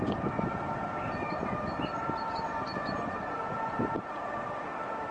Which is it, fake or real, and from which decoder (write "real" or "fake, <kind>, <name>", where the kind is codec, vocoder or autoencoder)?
real